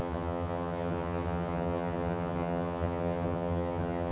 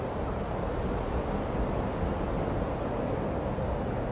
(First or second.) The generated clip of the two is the first